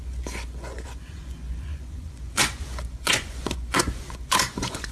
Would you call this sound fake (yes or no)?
yes